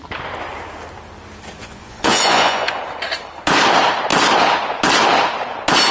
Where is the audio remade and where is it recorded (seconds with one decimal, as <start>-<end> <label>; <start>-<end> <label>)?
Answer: 0.0-1.6 recorded; 1.6-2.8 remade; 2.8-5.9 recorded